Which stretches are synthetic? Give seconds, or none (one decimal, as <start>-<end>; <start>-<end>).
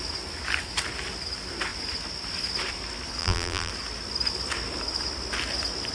3.2-3.7